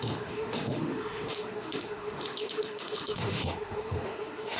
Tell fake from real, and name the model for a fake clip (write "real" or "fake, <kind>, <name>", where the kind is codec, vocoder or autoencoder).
fake, autoencoder, DAC-VAE